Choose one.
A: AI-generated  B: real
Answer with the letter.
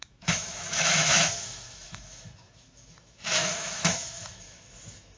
A